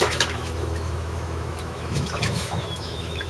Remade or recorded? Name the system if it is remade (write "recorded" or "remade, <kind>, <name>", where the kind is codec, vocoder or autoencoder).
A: remade, autoencoder, DAC-VAE